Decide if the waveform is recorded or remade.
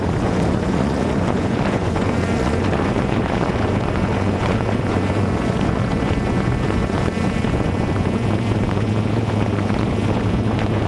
remade